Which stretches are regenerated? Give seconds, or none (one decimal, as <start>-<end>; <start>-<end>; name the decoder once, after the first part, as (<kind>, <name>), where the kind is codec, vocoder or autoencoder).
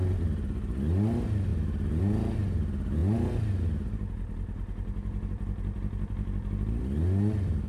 none